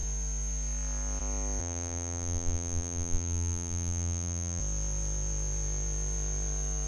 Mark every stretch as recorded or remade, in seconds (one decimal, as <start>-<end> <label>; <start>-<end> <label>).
0.0-1.6 recorded; 1.6-4.6 remade; 4.6-6.9 recorded